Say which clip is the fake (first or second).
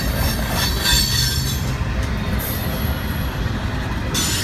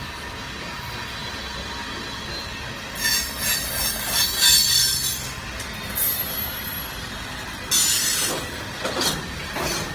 first